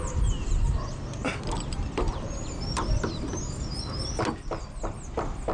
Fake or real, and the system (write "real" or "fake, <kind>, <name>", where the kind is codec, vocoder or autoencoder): real